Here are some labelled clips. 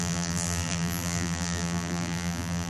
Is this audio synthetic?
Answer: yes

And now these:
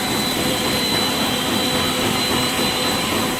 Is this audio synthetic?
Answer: yes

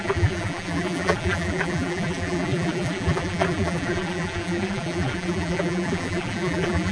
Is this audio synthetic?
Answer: yes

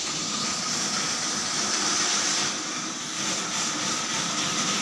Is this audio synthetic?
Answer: yes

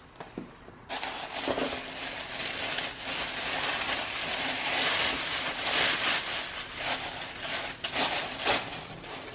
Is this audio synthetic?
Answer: no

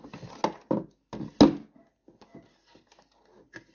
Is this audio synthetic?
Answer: no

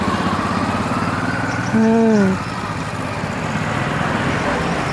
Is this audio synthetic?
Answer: no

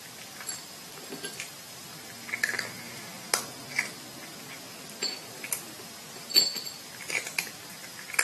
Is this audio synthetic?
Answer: no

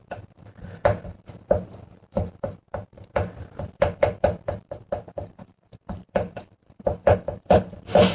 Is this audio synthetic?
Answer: yes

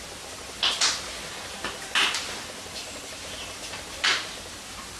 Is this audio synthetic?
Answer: yes